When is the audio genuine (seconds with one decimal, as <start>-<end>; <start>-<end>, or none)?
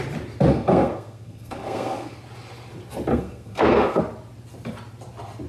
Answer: 0.0-0.5; 2.2-3.1; 4.0-5.5